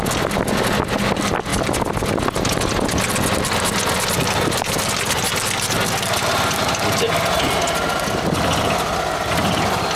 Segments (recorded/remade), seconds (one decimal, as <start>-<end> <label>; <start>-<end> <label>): 0.0-10.0 recorded